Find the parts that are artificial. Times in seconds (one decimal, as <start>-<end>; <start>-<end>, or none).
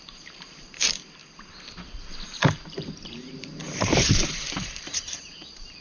0.0-1.2; 3.1-5.8